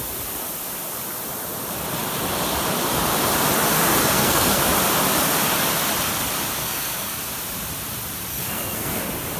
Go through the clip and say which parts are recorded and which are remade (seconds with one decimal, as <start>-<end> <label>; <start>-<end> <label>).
0.0-4.0 recorded; 4.0-4.6 remade; 4.6-6.6 recorded; 6.6-7.2 remade; 7.2-8.3 recorded; 8.3-9.0 remade; 9.0-9.4 recorded